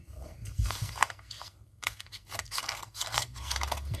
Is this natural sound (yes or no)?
no